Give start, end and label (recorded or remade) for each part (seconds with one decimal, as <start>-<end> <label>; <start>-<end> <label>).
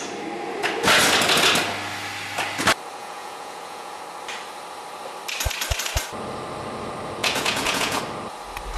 0.0-3.0 recorded; 3.0-4.0 remade; 4.0-7.2 recorded; 7.2-8.0 remade; 8.0-8.8 recorded